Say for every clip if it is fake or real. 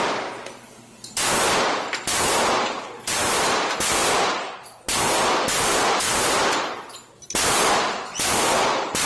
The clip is real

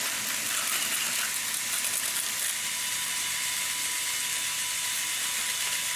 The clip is real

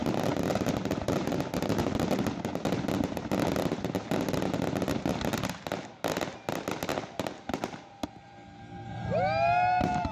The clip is real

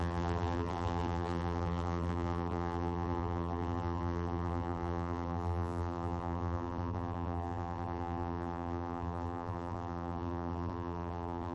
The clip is fake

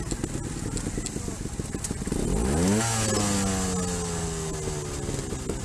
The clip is real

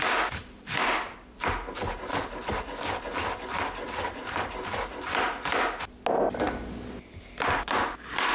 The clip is real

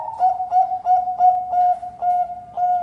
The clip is real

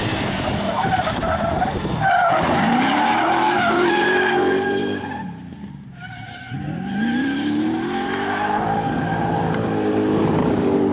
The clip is fake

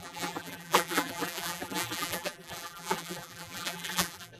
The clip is fake